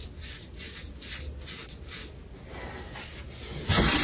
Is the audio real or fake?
real